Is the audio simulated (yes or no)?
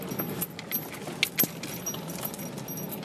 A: no